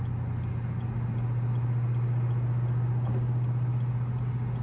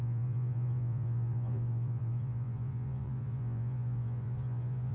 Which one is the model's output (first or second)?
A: second